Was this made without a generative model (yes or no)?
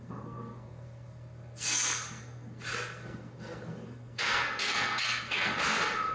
no